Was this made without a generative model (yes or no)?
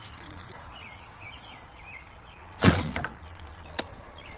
no